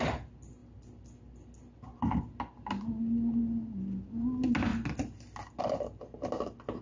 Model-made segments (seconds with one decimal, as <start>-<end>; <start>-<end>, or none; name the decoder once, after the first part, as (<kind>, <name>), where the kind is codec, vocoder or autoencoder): none